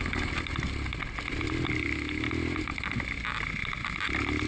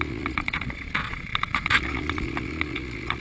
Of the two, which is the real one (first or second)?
first